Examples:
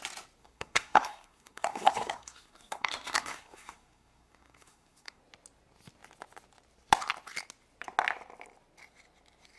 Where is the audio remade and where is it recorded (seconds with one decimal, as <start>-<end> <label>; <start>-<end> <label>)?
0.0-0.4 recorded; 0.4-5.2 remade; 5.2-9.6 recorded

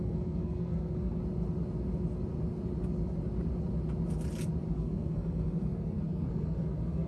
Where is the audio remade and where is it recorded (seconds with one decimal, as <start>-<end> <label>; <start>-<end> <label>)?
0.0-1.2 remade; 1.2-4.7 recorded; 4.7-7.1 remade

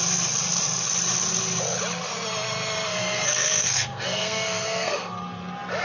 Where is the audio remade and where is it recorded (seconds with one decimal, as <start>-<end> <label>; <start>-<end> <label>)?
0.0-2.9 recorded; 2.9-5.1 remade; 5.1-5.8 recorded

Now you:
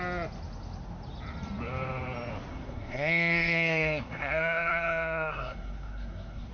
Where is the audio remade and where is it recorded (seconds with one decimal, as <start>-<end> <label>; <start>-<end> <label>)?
0.0-2.5 recorded; 2.5-6.5 remade